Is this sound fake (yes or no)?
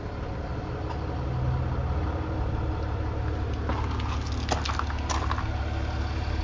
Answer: no